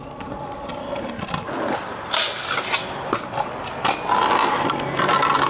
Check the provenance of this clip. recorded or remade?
recorded